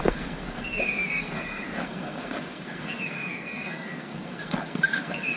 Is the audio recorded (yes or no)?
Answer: no